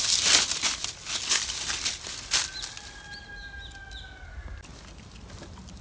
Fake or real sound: real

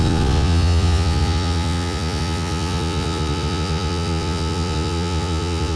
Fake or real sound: fake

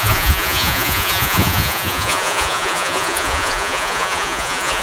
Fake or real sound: fake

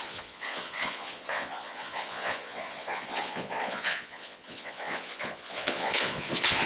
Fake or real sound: fake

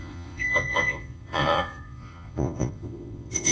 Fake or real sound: fake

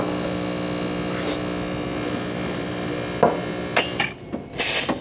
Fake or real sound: real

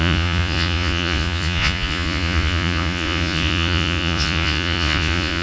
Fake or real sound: fake